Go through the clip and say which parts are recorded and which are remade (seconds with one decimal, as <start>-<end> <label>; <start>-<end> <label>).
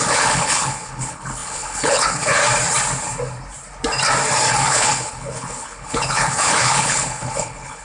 0.0-2.4 remade; 2.4-4.5 recorded; 4.5-7.8 remade